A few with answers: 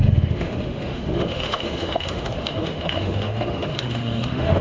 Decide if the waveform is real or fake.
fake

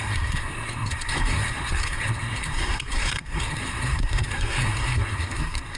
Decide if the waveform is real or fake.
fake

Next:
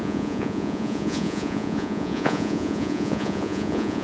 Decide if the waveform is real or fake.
fake